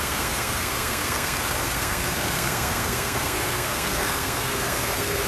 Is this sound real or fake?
fake